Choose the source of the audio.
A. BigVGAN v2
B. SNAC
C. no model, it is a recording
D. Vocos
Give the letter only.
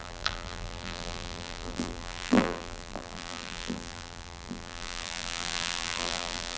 A